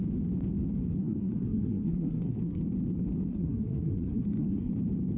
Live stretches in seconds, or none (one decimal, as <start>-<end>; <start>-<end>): 0.0-1.0; 2.6-3.3; 4.7-5.2